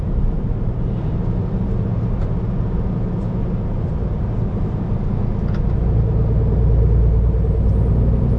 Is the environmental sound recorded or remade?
recorded